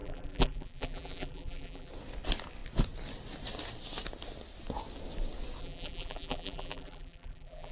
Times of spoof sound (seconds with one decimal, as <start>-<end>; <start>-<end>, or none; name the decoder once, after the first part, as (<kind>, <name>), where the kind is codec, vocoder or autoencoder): 0.0-1.9 (vocoder, BigVGAN v2); 5.6-7.7